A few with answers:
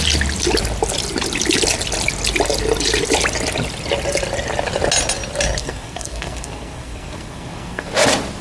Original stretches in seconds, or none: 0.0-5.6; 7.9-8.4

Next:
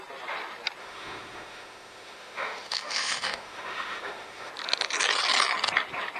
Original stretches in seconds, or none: 0.0-0.8; 4.5-6.2

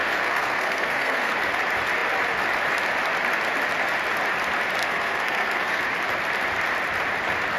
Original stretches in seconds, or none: 1.3-4.8; 5.8-7.6

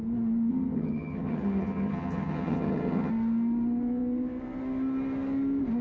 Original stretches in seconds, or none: 0.0-0.5; 3.1-5.8

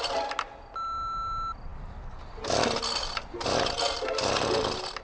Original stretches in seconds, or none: 0.0-5.0

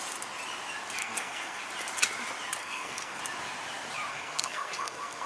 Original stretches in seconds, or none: 0.0-1.0; 1.6-2.6; 3.2-4.1

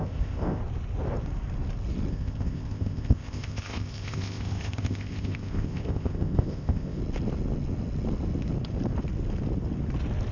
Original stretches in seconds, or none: 0.6-2.1; 7.0-10.3